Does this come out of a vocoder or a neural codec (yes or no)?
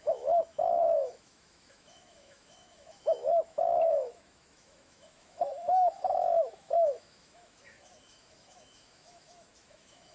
yes